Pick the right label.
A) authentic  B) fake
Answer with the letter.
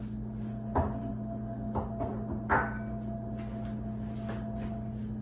A